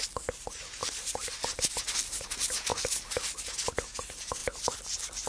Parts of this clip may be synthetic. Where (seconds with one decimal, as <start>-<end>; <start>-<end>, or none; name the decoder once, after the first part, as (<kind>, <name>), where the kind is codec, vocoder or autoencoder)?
0.8-1.8 (vocoder, BigVGAN v2)